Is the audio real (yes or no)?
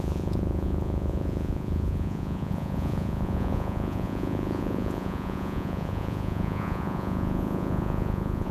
no